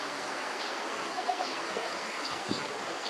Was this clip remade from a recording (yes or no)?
yes